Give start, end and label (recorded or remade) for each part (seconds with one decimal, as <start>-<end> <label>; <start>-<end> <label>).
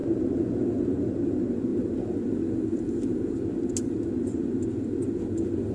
0.0-5.7 recorded